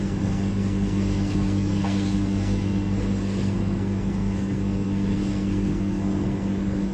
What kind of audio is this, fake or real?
fake